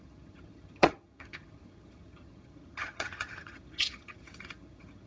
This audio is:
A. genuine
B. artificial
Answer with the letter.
B